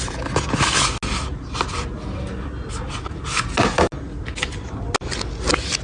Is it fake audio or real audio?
real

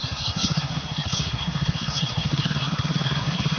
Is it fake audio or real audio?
fake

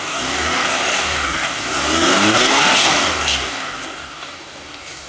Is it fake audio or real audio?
fake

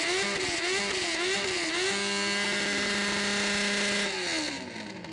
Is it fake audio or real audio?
real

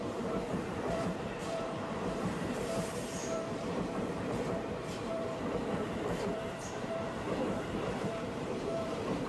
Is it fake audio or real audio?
fake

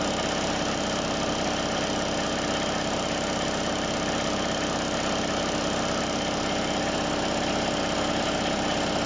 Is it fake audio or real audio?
real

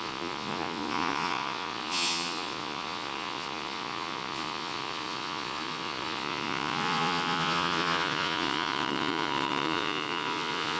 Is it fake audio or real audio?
fake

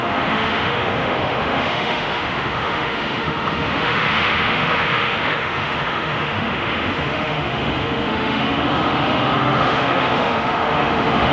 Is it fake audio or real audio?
fake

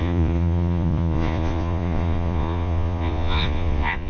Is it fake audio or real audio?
fake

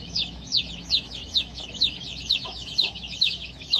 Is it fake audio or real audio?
fake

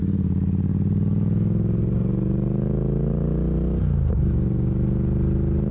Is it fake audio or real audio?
real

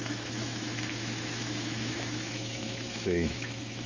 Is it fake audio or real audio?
fake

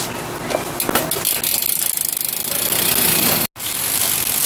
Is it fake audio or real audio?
real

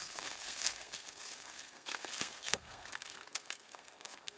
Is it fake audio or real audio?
fake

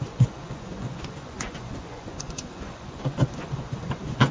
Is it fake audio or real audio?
fake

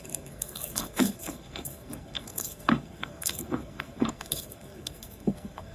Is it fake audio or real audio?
fake